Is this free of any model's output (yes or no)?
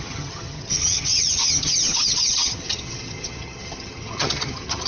no